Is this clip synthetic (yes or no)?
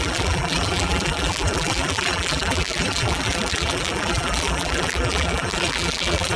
yes